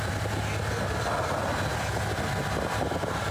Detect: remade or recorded recorded